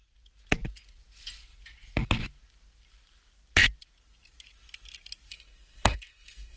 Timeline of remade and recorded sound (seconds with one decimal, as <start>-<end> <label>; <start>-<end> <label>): 0.0-5.3 recorded; 5.3-6.6 remade